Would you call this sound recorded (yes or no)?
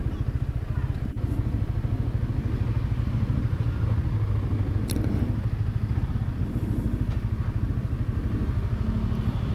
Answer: yes